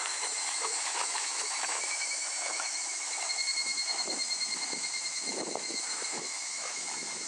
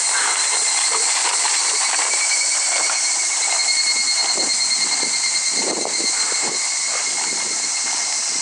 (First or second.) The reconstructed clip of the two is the first